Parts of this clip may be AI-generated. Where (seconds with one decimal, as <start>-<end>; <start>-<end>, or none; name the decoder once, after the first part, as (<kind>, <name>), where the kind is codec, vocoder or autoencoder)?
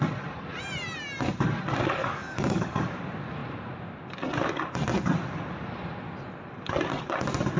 2.0-3.0 (codec, DAC)